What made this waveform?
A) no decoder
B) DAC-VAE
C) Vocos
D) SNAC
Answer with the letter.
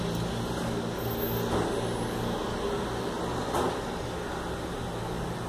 A